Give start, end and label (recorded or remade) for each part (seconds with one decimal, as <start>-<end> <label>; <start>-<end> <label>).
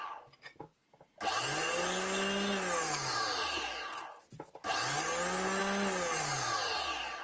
0.0-7.2 recorded